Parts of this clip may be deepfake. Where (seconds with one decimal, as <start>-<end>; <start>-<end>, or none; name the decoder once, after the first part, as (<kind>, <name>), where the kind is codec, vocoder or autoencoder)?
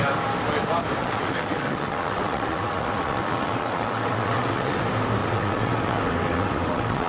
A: 1.0-4.8 (vocoder, WaveNeXt); 5.2-7.1